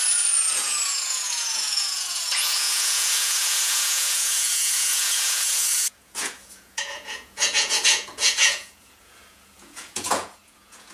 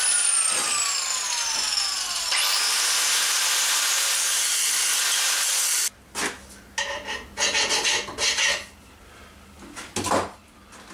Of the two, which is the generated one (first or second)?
first